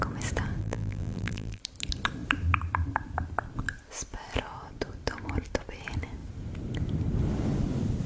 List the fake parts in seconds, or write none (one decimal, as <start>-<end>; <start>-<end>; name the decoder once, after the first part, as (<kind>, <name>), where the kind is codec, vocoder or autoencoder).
0.6-1.6 (vocoder, BigVGAN v2)